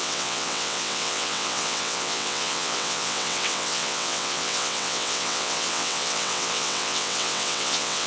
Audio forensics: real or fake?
fake